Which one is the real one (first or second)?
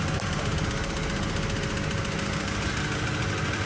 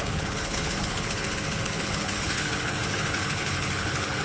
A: first